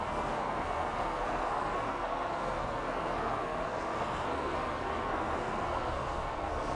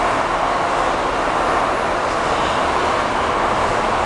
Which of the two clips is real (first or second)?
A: second